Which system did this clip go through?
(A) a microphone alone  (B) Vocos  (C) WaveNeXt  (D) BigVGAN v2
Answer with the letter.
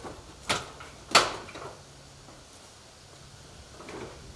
A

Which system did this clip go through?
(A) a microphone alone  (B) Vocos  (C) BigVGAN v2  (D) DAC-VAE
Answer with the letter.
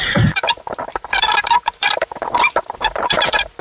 C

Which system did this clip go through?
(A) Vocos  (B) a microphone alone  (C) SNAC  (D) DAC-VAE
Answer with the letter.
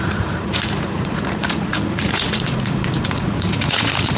A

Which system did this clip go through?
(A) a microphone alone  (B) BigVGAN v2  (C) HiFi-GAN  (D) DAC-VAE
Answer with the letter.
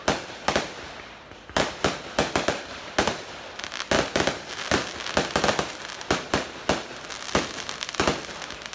A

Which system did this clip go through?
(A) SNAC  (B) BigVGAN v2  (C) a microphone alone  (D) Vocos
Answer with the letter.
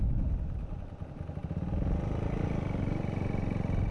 C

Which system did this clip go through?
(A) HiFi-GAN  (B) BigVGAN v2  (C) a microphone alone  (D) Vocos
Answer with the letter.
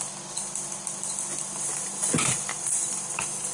C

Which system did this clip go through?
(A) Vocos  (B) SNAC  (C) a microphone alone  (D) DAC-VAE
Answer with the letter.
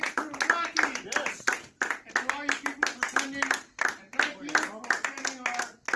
C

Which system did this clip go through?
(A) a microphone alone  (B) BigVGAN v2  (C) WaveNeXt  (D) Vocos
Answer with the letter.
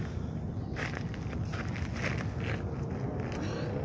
A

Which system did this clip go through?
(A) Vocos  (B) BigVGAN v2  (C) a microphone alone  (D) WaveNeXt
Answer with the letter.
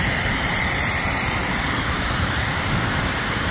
B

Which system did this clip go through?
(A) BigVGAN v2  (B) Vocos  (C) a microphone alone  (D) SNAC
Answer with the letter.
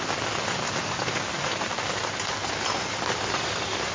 C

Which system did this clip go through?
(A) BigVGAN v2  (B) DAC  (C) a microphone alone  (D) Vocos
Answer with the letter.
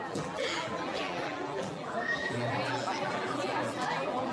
A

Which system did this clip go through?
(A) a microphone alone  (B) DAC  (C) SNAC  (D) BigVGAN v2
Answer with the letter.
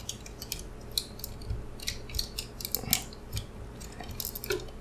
A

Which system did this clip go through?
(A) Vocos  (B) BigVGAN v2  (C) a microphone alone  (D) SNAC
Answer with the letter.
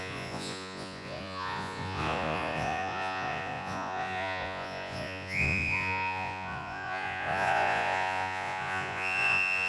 A